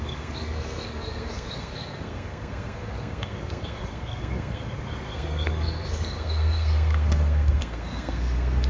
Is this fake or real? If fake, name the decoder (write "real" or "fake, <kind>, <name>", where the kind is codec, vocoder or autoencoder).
fake, codec, SNAC